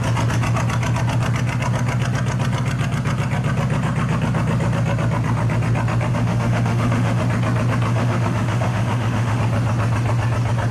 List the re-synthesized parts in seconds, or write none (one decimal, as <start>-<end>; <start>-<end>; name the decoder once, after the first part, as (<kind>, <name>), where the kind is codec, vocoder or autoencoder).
6.1-7.2 (autoencoder, DAC-VAE); 7.9-9.4